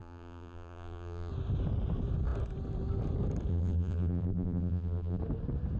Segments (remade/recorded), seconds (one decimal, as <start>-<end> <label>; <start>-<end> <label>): 0.0-1.3 remade; 1.3-3.5 recorded; 3.5-5.2 remade; 5.2-5.8 recorded